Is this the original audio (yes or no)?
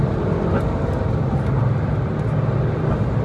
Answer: yes